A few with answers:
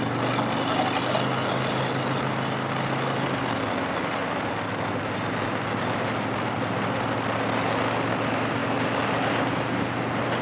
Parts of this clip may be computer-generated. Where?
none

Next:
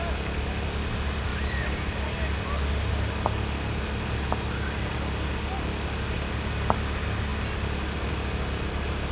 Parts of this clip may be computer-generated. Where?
none

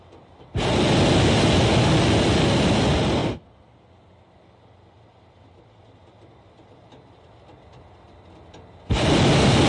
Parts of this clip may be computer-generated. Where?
none

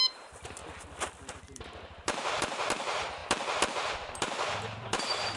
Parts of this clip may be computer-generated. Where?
0.0-0.6 (vocoder, BigVGAN v2); 1.3-3.2; 3.7-5.4

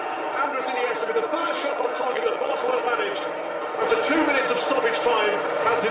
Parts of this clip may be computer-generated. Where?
1.4-2.8 (vocoder, WaveNeXt)

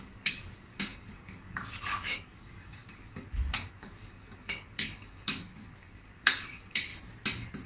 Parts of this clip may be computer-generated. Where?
0.0-6.9 (codec, DAC)

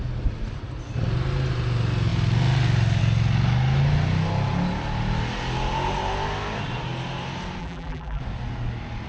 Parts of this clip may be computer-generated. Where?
7.6-8.2 (vocoder, BigVGAN v2)

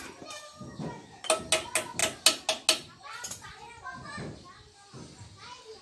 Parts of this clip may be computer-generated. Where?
none